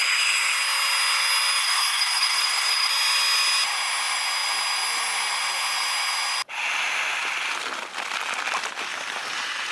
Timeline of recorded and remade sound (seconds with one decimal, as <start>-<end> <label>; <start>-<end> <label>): 0.0-1.6 recorded; 1.6-2.9 remade; 2.9-9.7 recorded